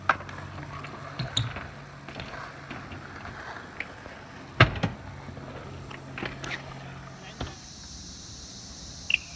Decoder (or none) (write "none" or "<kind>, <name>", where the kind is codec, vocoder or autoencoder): none